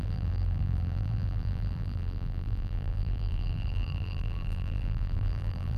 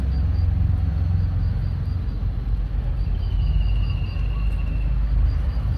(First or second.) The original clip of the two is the second